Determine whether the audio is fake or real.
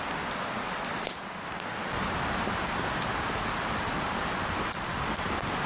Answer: real